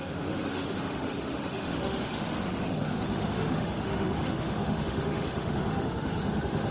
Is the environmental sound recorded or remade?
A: remade